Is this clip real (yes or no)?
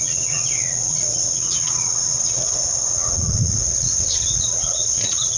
no